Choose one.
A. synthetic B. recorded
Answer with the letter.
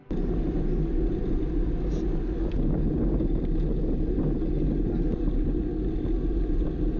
B